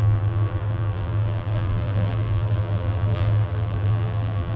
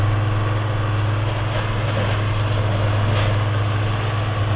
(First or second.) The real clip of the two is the second